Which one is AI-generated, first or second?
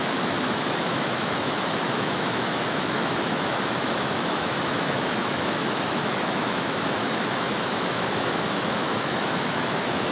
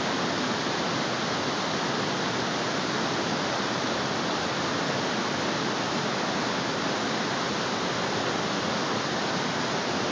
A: first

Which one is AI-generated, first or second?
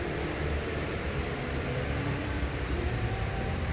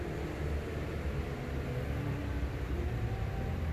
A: first